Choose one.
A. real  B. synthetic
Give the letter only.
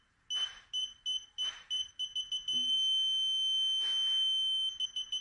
A